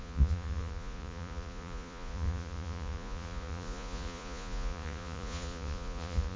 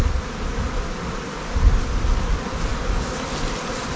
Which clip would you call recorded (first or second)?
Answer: second